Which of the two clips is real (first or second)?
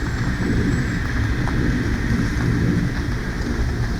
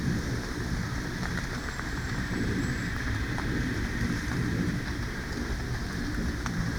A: first